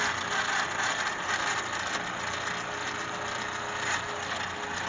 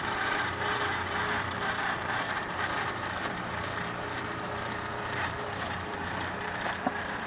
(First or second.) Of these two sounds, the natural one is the first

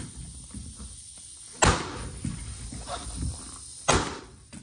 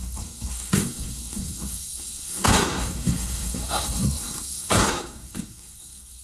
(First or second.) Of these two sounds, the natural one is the first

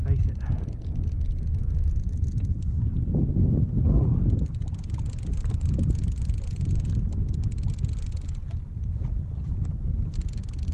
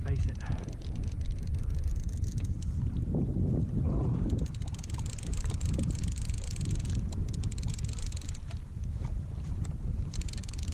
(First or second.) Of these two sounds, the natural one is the first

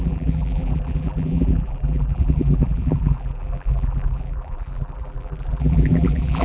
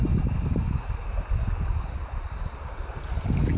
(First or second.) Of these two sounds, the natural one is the second